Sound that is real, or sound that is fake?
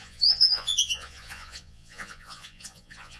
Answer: fake